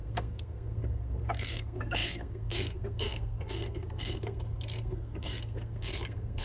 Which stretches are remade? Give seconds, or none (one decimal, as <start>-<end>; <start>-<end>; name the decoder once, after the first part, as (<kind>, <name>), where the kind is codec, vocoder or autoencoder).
0.0-6.4 (codec, SNAC)